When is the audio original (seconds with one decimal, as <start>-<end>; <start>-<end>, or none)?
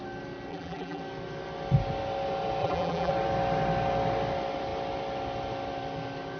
0.0-0.5; 1.0-2.6; 3.1-6.4